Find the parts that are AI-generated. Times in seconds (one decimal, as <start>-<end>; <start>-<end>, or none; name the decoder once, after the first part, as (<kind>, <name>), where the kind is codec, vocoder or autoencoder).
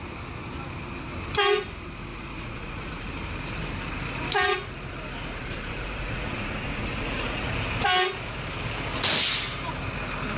2.1-3.1 (vocoder, Vocos); 5.4-7.5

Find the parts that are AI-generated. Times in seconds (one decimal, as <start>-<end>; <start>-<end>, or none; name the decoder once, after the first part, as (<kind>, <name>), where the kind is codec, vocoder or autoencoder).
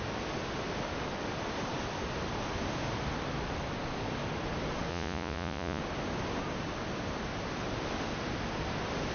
4.9-5.8 (vocoder, Vocos)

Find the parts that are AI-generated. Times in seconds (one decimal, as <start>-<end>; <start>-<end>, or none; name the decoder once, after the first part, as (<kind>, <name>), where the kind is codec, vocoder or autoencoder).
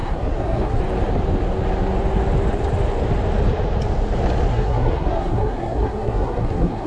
0.0-0.8 (codec, SNAC); 4.5-6.9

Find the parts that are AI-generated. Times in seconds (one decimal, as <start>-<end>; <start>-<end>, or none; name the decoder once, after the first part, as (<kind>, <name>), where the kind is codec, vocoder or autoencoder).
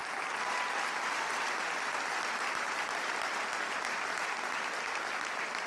none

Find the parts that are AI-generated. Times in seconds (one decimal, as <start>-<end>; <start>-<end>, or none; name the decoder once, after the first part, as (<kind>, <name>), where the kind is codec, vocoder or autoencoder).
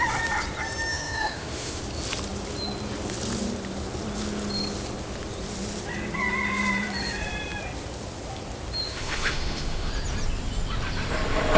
0.9-1.8 (autoencoder, DAC-VAE); 8.9-9.9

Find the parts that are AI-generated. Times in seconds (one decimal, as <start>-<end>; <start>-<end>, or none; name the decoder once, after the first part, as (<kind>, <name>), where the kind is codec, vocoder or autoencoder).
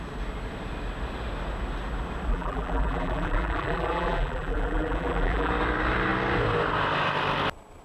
2.3-5.5 (vocoder, BigVGAN v2)